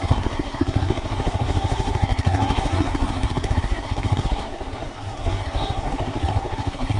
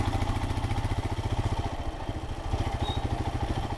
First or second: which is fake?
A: first